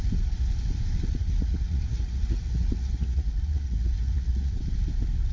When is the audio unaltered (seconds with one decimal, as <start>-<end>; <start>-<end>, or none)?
0.0-1.4; 4.6-5.3